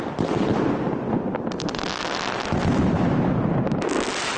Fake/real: real